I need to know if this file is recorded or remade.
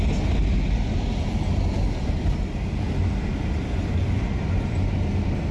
recorded